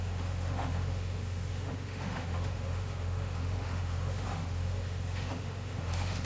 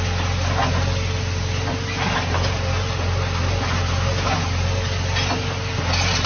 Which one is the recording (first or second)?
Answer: second